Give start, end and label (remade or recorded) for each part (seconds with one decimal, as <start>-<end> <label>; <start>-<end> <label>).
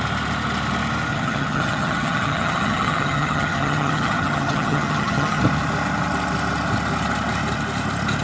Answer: 0.0-1.1 recorded; 1.1-5.4 remade; 5.4-8.2 recorded